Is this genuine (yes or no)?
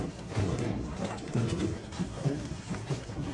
no